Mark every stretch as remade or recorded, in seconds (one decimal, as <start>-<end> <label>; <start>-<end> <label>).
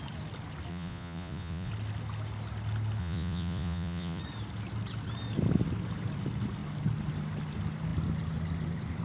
0.0-0.7 recorded; 0.7-1.7 remade; 1.7-3.0 recorded; 3.0-4.2 remade; 4.2-9.0 recorded